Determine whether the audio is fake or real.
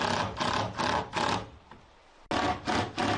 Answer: real